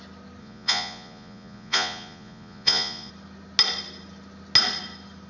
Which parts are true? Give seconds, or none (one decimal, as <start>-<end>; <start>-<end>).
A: 0.0-0.4; 3.1-5.3